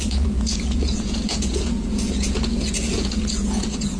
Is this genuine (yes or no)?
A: no